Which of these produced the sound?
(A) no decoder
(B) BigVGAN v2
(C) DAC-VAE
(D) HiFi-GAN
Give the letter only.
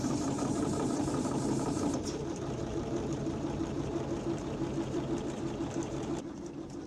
B